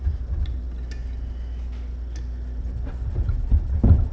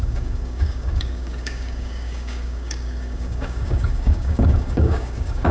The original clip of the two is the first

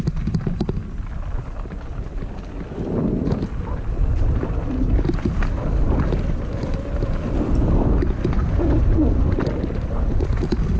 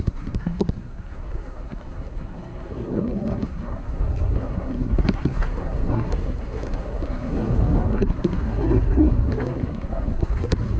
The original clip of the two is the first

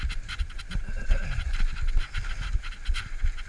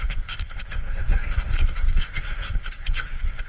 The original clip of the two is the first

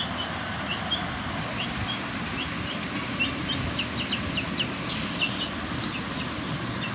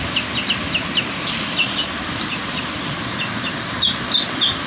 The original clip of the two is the first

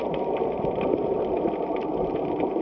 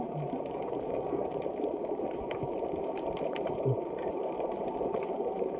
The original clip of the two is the first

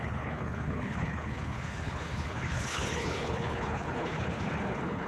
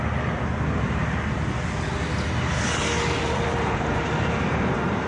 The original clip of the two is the second